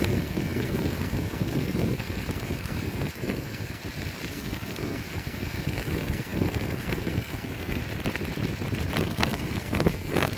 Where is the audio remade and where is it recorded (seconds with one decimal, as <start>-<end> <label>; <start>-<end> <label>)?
0.0-3.8 remade; 3.8-4.3 recorded; 4.3-7.8 remade; 7.8-9.0 recorded; 9.0-10.4 remade